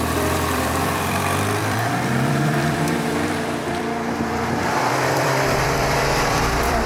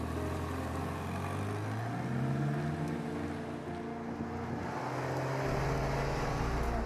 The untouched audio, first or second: second